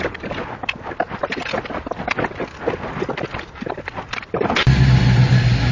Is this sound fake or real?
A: real